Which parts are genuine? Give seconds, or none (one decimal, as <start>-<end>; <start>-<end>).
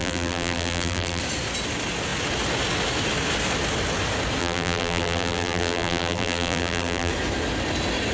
1.2-4.4; 7.1-8.1